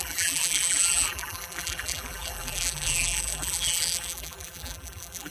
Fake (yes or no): yes